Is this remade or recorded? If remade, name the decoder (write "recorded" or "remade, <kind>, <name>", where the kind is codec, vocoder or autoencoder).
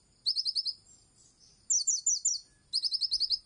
recorded